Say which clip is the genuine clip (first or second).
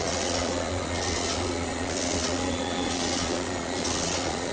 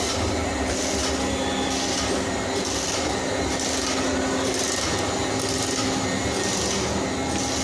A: second